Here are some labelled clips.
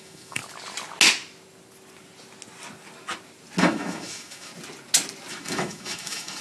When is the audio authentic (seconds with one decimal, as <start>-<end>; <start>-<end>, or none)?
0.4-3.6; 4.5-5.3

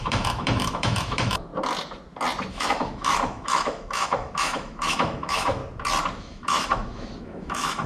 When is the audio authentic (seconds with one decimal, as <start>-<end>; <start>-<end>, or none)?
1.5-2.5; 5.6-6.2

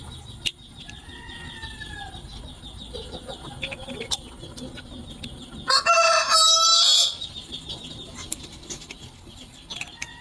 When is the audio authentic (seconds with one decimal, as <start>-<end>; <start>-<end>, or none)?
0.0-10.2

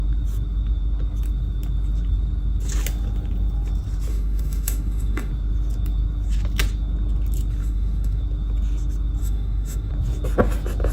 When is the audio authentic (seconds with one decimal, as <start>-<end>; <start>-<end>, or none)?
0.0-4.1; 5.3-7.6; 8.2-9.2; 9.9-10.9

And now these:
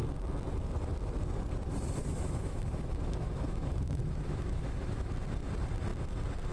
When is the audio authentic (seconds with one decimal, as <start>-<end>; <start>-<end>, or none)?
0.0-2.0; 5.1-6.5

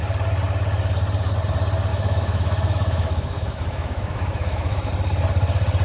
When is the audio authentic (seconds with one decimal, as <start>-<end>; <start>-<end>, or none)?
0.0-1.9; 4.9-5.8

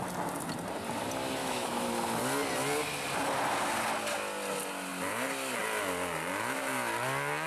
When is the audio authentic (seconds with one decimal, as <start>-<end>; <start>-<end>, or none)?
0.0-1.4; 1.9-7.5

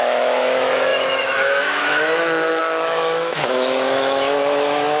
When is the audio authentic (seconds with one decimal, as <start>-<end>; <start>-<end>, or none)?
none